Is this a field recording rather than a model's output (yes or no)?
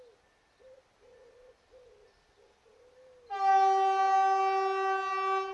yes